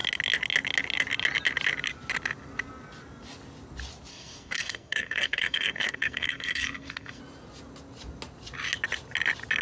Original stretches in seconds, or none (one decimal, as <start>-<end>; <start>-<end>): 0.0-4.1; 7.2-9.6